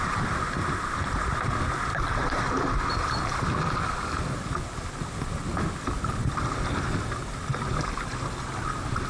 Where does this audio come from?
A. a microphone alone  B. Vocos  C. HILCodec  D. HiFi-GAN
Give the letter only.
A